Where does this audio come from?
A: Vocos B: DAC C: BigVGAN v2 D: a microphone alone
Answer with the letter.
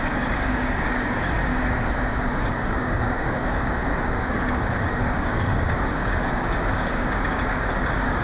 B